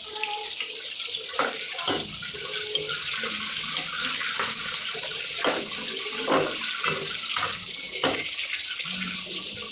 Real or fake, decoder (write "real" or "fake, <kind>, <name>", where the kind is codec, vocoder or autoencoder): real